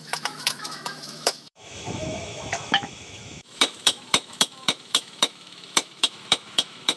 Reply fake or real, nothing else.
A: fake